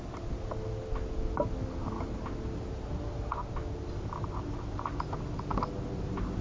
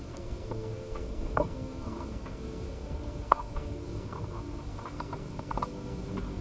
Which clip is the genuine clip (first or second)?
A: first